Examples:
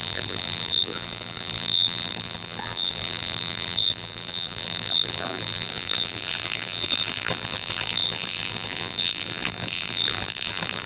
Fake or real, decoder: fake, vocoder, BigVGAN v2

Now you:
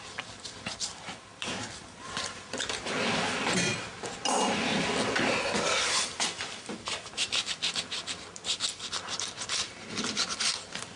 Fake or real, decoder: real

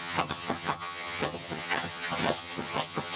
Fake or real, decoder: fake, vocoder, HiFi-GAN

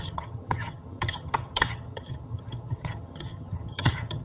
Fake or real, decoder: fake, vocoder, HiFi-GAN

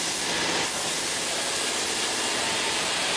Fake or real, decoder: real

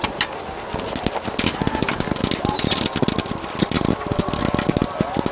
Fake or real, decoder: real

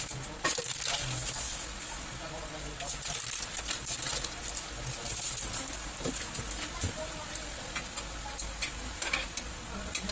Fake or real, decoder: real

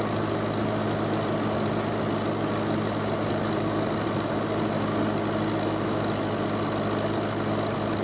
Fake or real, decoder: real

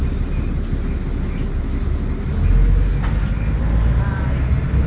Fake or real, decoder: real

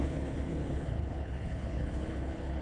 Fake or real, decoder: fake, codec, HILCodec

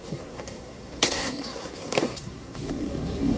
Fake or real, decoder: fake, codec, SNAC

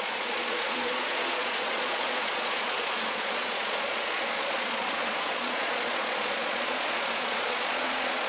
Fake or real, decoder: fake, vocoder, Vocos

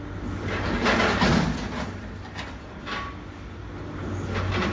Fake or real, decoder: real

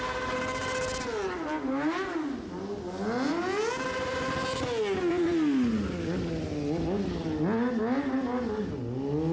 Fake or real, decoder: real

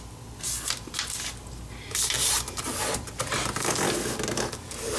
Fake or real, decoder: real